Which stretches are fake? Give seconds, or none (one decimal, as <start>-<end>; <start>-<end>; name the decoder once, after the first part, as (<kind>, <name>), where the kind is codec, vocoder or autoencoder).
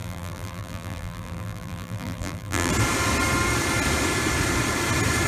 0.0-2.7 (vocoder, BigVGAN v2)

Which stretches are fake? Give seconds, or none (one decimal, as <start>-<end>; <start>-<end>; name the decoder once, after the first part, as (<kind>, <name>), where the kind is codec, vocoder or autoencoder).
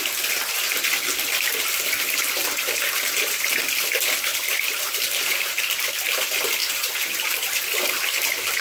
2.4-3.5 (vocoder, BigVGAN v2); 4.5-5.5; 6.6-7.5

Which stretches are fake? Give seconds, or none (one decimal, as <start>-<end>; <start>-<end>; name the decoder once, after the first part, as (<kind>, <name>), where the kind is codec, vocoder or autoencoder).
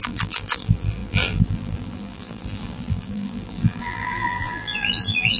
0.0-5.4 (vocoder, BigVGAN v2)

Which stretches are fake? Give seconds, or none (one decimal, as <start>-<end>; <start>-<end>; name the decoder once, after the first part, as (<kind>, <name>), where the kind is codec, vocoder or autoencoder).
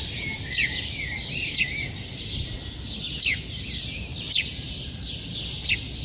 none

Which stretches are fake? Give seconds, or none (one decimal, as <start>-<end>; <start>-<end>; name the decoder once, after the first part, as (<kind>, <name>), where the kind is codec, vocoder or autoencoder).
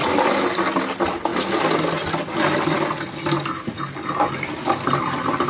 none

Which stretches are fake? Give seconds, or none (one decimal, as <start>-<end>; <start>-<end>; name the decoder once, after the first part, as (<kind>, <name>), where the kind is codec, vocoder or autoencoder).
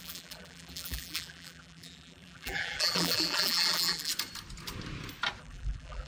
0.0-4.1 (vocoder, BigVGAN v2); 5.4-6.1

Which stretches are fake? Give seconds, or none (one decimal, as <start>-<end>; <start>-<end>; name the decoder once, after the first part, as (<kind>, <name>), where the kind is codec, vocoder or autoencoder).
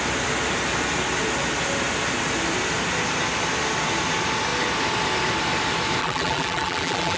6.0-7.2 (vocoder, BigVGAN v2)